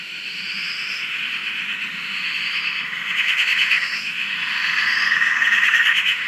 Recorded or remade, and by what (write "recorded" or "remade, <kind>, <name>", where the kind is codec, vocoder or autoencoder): remade, autoencoder, DAC-VAE